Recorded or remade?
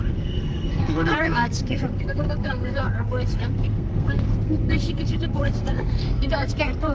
remade